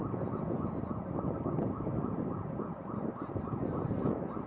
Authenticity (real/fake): real